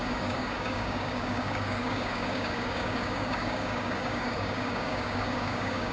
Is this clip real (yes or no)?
no